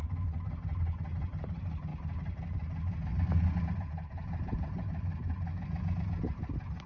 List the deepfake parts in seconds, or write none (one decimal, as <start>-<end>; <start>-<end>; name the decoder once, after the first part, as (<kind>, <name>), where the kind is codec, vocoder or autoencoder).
0.0-6.9 (vocoder, BigVGAN v2)